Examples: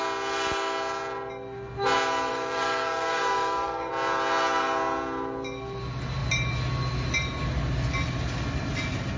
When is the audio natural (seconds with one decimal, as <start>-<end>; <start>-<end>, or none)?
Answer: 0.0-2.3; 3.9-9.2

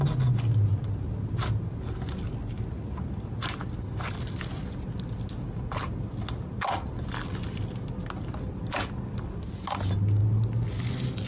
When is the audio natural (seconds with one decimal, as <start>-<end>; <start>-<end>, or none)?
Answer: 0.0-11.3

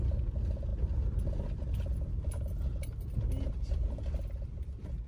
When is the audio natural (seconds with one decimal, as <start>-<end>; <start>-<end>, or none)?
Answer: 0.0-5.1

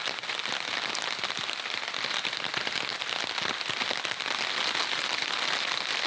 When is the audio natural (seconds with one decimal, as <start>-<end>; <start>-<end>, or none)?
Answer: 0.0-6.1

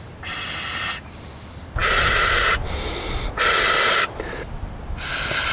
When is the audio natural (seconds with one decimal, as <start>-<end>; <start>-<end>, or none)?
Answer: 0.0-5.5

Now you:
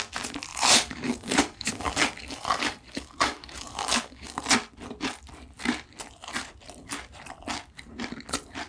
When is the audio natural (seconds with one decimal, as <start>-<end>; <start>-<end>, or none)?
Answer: 0.0-0.5; 4.4-8.7